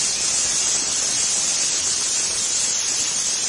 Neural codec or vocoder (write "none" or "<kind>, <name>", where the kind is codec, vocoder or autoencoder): none